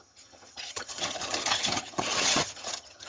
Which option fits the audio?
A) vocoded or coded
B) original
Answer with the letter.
A